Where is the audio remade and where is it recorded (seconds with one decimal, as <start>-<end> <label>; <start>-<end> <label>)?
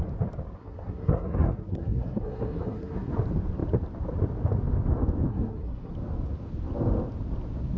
0.0-0.6 recorded; 0.6-3.1 remade; 3.1-5.3 recorded; 5.3-5.9 remade; 5.9-7.8 recorded